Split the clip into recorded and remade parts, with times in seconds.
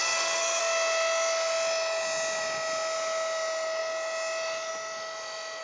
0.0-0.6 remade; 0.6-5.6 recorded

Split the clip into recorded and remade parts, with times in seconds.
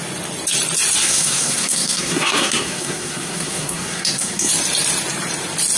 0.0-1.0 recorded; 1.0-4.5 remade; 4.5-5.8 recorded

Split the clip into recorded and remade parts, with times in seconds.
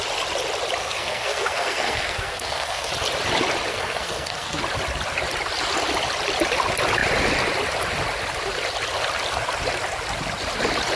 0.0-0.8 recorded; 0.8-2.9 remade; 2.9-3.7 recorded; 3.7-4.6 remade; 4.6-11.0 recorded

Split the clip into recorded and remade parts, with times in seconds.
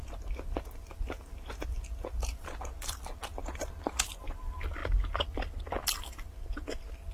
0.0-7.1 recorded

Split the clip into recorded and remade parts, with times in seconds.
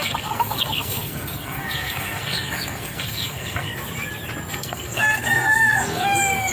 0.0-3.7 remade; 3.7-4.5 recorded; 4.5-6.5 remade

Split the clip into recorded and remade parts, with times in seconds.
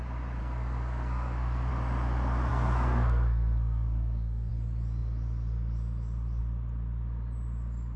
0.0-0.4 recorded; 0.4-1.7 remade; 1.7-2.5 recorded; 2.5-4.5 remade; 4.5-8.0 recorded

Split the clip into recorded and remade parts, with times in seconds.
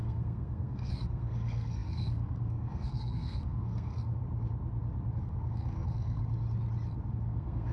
0.0-4.2 remade; 4.2-5.2 recorded; 5.2-6.2 remade; 6.2-7.1 recorded; 7.1-7.7 remade